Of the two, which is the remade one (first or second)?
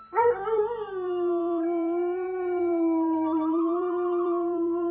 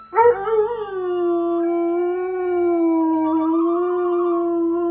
first